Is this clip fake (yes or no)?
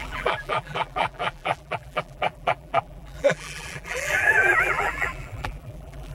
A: yes